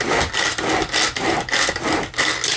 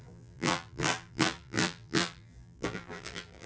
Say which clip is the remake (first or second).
second